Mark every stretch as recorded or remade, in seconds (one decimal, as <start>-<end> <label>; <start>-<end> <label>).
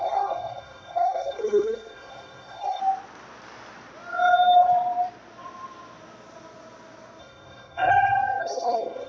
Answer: 0.0-2.8 remade; 2.8-7.2 recorded; 7.2-7.9 remade; 7.9-8.4 recorded; 8.4-9.1 remade